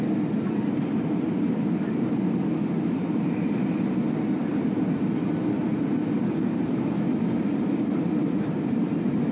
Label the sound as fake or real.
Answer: real